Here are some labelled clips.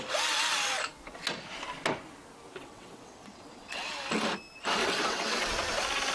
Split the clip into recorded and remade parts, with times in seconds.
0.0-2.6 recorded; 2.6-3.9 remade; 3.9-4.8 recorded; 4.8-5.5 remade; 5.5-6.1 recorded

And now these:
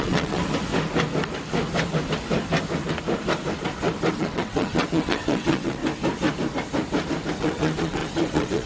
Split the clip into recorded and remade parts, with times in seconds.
0.0-0.4 remade; 0.4-4.1 recorded; 4.1-5.8 remade; 5.8-7.4 recorded; 7.4-8.7 remade

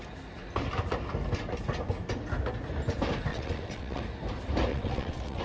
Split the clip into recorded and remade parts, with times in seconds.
0.0-3.3 recorded; 3.3-4.0 remade; 4.0-4.7 recorded; 4.7-5.4 remade

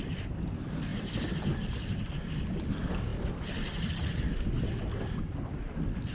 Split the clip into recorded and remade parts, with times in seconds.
0.0-6.1 recorded

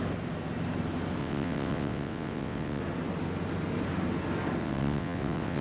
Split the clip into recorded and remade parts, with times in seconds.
0.0-1.2 recorded; 1.2-2.8 remade; 2.8-4.6 recorded; 4.6-5.6 remade

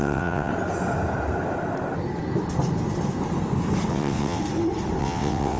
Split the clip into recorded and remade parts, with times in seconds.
0.0-0.5 remade; 0.5-3.9 recorded; 3.9-4.4 remade; 4.4-5.0 recorded; 5.0-5.6 remade

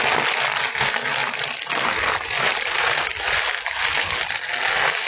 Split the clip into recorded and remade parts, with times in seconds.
0.0-5.1 recorded

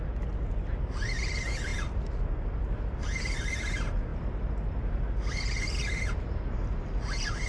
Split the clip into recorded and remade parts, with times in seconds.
0.0-7.5 recorded